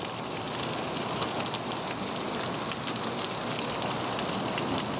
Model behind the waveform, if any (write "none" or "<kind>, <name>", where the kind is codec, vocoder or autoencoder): none